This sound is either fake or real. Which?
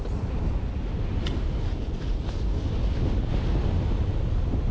real